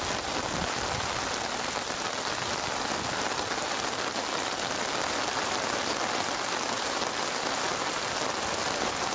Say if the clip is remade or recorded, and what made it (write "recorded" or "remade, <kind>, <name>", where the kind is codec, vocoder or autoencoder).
recorded